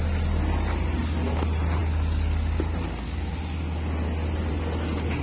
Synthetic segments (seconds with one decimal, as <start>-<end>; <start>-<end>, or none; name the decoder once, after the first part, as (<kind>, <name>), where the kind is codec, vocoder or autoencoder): none